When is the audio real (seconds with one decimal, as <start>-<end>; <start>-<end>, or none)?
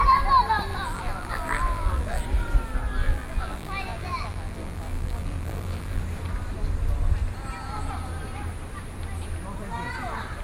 0.0-0.7; 2.2-3.0; 6.0-10.4